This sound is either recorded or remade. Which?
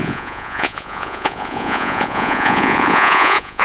remade